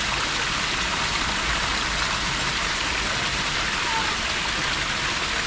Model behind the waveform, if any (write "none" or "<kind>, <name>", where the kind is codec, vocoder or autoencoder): none